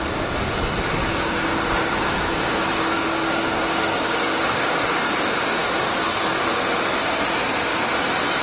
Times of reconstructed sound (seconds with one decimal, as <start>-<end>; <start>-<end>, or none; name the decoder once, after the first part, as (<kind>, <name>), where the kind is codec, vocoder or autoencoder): 1.0-5.1 (codec, DAC); 5.5-6.2